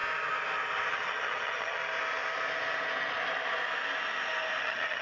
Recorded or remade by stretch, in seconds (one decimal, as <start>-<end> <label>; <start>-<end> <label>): 0.0-0.9 recorded; 0.9-1.8 remade; 1.8-4.6 recorded; 4.6-5.0 remade